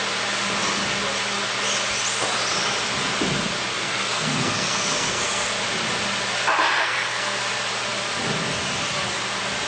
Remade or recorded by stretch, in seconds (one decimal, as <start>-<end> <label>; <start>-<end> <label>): 0.0-3.7 recorded; 3.7-5.5 remade; 5.5-6.8 recorded; 6.8-7.4 remade; 7.4-9.7 recorded

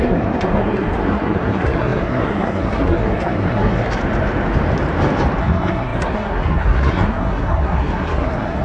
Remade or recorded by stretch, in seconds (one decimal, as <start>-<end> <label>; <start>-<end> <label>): 0.0-4.0 remade; 4.0-5.4 recorded; 5.4-8.6 remade

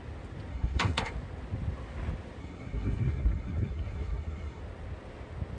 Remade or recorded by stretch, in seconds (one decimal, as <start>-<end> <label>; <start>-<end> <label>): 0.0-0.5 recorded; 0.5-1.1 remade; 1.1-2.4 recorded; 2.4-4.6 remade; 4.6-5.6 recorded